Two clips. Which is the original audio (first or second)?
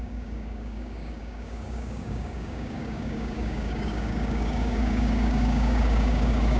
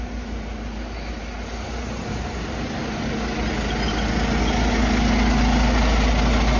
second